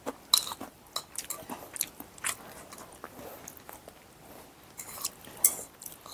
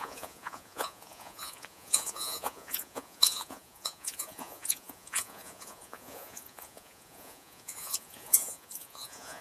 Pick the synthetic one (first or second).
second